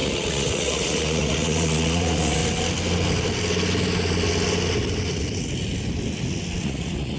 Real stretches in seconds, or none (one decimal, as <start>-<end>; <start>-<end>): 2.4-6.6